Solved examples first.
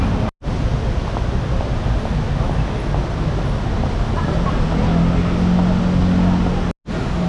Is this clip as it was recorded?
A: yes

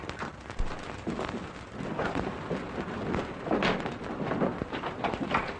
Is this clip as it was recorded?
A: yes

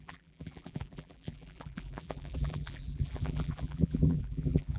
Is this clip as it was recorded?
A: no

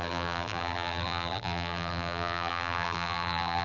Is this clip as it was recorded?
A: no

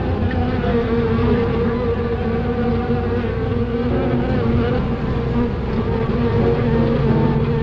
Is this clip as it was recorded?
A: yes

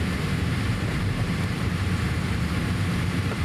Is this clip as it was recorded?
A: no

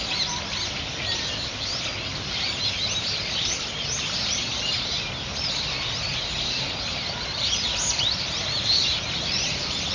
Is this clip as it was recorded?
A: yes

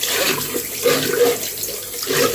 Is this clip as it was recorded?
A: yes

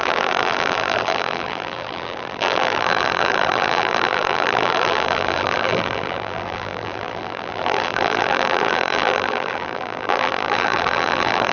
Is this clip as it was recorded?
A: no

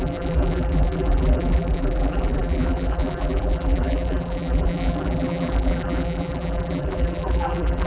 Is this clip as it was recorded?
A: no